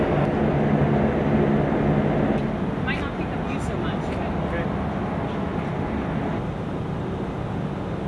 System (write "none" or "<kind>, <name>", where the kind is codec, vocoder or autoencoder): none